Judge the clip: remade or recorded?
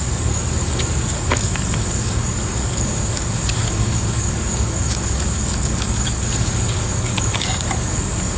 remade